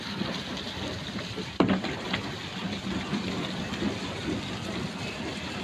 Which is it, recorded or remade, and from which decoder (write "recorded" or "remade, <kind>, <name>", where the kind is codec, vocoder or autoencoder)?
recorded